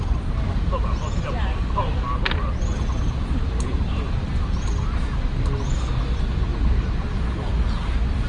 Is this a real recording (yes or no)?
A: yes